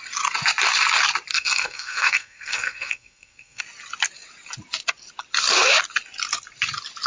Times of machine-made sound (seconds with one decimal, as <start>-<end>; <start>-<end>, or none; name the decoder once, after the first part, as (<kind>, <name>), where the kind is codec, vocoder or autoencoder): 1.3-3.6 (codec, SNAC)

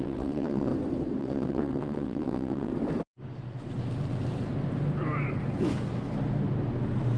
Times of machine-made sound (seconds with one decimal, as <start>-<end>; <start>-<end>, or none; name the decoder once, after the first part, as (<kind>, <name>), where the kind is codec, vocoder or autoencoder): 0.0-0.7 (vocoder, WaveNeXt); 1.2-2.7

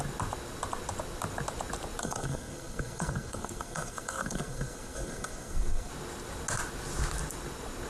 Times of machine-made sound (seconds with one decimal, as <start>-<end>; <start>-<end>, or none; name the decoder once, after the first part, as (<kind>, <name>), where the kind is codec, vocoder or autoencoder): 2.0-5.9 (codec, SNAC)

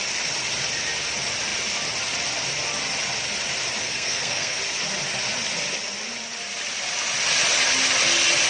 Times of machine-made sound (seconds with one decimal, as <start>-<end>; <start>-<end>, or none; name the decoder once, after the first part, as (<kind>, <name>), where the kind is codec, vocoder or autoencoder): 3.8-4.6 (codec, SNAC)

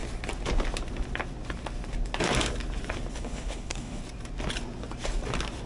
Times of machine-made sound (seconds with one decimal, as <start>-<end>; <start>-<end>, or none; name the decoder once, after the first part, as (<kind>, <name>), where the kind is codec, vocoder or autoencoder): 3.1-4.0 (codec, HILCodec)